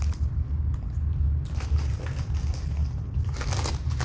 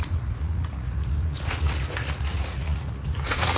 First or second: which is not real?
second